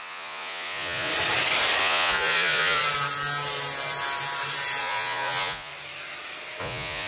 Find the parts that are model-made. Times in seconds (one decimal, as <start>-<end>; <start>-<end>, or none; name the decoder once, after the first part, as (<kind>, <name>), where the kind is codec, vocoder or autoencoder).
0.0-1.1 (vocoder, Vocos); 1.8-2.8; 4.8-5.7; 6.6-7.1